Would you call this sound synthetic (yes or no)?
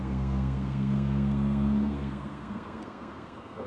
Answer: yes